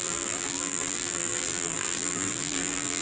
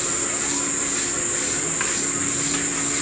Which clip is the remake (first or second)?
first